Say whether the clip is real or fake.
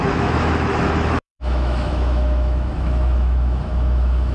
fake